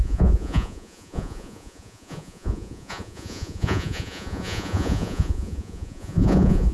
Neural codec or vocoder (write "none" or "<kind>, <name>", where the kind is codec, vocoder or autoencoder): vocoder, Vocos